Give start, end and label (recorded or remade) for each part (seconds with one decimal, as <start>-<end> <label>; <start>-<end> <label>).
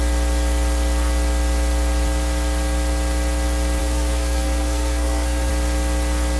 0.0-3.8 recorded; 3.8-5.5 remade; 5.5-6.4 recorded